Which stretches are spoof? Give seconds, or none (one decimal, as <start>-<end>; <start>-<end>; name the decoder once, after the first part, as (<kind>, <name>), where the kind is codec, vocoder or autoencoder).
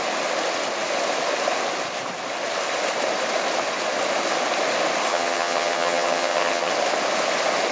5.1-6.7 (vocoder, HiFi-GAN)